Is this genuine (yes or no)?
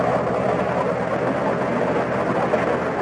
yes